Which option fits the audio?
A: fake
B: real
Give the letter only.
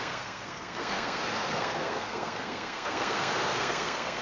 A